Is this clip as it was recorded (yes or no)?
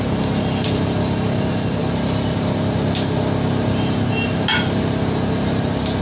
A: yes